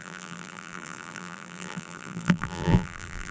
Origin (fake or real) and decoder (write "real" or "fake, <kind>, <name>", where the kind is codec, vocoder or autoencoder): fake, vocoder, BigVGAN v2